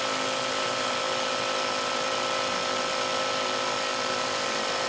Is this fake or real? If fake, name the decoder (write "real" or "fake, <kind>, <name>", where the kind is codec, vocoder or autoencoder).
real